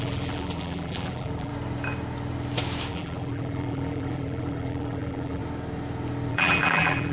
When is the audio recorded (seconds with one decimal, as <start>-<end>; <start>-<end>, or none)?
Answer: 1.5-2.9; 5.4-6.3